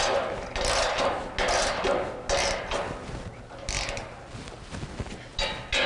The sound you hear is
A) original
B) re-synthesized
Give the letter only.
A